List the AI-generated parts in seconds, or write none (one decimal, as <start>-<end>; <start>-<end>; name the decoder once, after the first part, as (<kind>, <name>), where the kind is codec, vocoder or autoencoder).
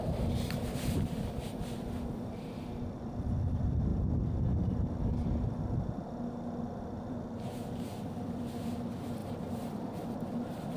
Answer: 0.0-3.9 (vocoder, BigVGAN v2); 7.0-10.8